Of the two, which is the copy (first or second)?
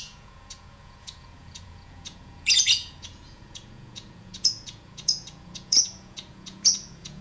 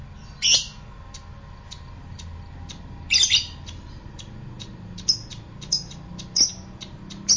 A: first